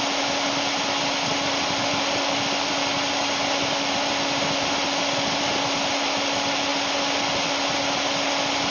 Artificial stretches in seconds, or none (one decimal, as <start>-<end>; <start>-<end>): none